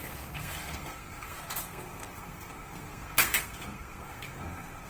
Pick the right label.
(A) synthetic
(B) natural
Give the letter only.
A